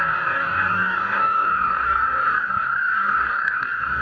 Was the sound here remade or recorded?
remade